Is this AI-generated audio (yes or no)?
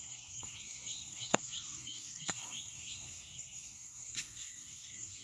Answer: yes